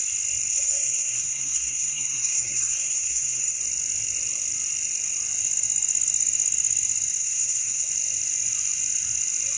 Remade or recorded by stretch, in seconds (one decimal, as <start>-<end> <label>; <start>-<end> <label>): 0.0-0.5 recorded; 0.5-3.6 remade; 3.6-7.2 recorded; 7.2-7.9 remade; 7.9-9.6 recorded